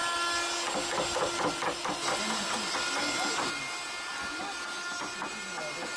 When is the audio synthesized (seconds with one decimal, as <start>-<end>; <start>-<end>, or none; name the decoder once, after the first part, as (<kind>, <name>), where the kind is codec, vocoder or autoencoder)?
none